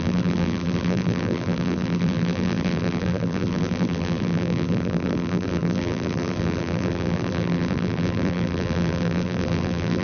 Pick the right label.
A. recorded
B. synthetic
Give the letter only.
B